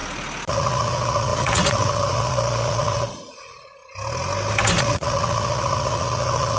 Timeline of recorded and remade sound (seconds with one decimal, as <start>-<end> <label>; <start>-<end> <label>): 0.0-0.5 recorded; 0.5-3.8 remade; 3.8-4.8 recorded; 4.8-6.6 remade